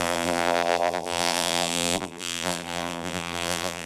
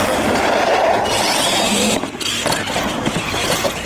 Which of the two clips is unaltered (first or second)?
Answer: second